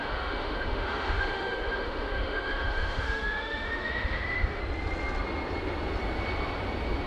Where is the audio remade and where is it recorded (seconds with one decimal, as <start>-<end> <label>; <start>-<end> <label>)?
0.0-4.6 remade; 4.6-7.1 recorded